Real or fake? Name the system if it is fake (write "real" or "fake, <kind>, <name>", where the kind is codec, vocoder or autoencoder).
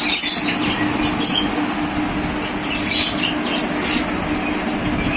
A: real